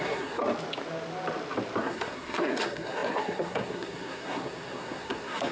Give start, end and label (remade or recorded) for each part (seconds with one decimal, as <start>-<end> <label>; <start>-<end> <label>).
0.0-0.4 remade; 0.4-1.8 recorded; 1.8-5.5 remade